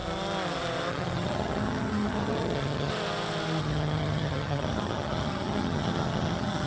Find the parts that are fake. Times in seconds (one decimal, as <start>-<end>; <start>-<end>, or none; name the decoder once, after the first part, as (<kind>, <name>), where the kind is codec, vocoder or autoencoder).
0.9-2.9 (vocoder, HiFi-GAN); 3.6-6.7